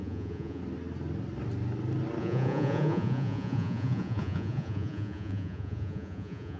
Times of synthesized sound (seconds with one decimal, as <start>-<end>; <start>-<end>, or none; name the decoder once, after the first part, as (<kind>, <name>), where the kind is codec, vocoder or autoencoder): 0.0-0.6 (vocoder, Vocos); 2.2-6.6